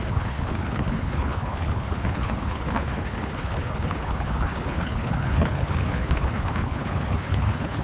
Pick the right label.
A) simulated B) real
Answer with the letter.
A